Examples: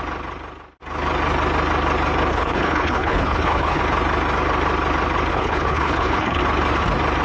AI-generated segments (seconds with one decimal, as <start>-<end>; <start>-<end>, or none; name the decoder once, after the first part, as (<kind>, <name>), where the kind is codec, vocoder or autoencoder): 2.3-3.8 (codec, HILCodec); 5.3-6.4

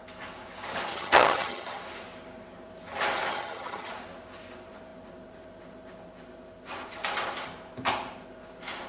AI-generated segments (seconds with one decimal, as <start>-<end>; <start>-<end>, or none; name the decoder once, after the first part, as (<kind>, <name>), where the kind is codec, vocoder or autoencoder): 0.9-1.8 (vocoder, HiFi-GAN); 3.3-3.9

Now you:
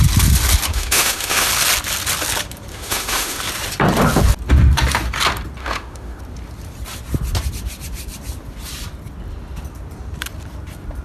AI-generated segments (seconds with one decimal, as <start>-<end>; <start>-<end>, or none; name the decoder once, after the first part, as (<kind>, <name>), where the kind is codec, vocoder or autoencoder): 0.7-1.5 (autoencoder, DAC-VAE); 2.7-3.4; 5.6-6.2

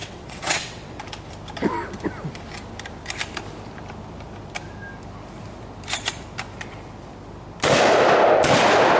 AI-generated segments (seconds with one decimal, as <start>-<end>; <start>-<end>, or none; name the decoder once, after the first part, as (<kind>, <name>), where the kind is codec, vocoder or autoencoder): 0.0-1.0 (vocoder, WaveNeXt)